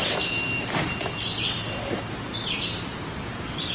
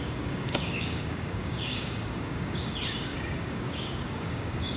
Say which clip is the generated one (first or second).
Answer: second